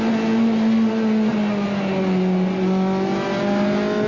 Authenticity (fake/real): real